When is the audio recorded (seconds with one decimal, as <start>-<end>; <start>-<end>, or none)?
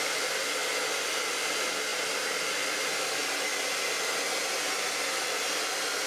0.0-1.9; 2.7-6.1